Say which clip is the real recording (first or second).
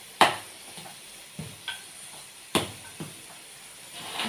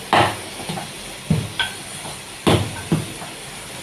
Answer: second